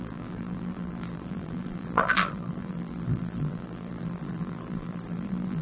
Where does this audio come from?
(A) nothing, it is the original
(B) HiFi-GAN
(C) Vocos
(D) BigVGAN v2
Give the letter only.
D